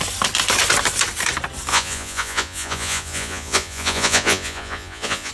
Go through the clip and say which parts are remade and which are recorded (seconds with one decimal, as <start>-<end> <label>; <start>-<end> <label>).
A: 0.0-1.7 recorded; 1.7-5.3 remade